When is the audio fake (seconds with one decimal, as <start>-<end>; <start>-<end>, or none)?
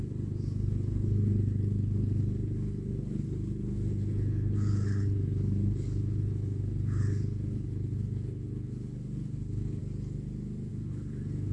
0.0-9.8; 10.7-11.5